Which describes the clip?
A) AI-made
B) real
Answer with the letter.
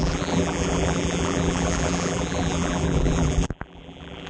A